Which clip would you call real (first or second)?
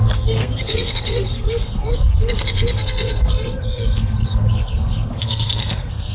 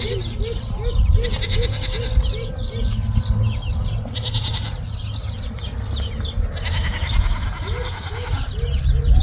second